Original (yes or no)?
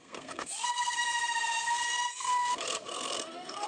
no